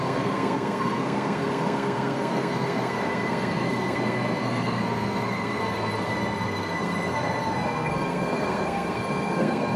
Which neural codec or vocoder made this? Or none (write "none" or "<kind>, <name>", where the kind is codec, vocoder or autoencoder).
codec, SNAC